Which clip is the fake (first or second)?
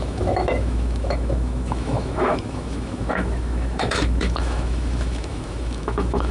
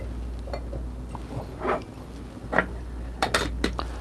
first